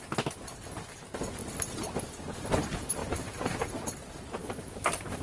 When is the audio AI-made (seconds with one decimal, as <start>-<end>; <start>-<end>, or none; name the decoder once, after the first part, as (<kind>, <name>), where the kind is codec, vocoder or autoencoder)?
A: 3.0-3.7 (vocoder, BigVGAN v2); 4.4-5.2